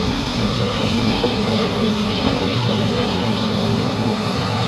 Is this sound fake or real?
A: fake